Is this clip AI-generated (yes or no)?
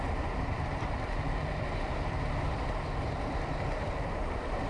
yes